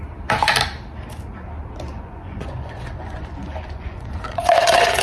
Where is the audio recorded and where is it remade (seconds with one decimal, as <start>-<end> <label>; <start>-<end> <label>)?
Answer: 0.0-1.9 recorded; 1.9-5.0 remade